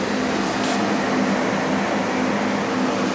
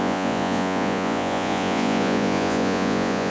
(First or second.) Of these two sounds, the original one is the first